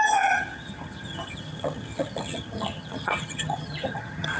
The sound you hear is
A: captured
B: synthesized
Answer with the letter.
B